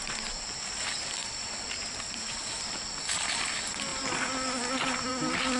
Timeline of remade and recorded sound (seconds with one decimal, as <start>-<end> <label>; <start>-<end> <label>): 0.0-5.6 recorded